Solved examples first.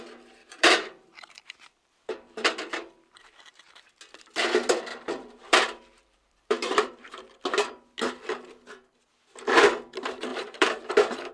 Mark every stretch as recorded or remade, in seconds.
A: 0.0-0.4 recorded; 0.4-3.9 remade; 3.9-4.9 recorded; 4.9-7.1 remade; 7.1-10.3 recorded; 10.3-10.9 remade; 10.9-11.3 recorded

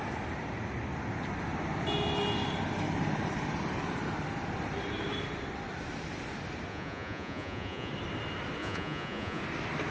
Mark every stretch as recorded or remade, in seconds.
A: 0.0-6.7 recorded; 6.7-7.9 remade; 7.9-8.6 recorded; 8.6-9.4 remade; 9.4-9.9 recorded